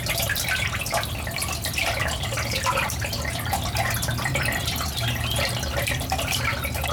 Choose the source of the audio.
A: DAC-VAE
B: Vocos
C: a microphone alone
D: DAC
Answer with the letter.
C